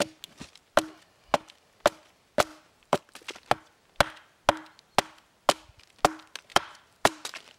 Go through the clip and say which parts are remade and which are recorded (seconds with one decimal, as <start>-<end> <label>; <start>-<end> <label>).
0.0-2.5 recorded; 2.5-3.0 remade; 3.0-6.5 recorded; 6.5-7.6 remade